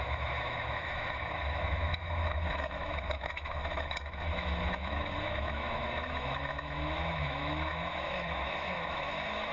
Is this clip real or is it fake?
fake